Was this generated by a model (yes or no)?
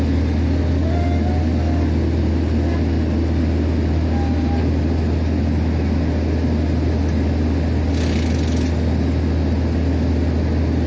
no